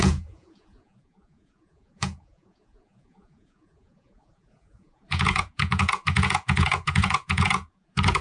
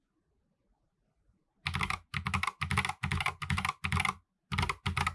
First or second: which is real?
second